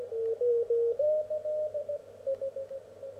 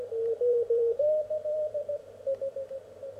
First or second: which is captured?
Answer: first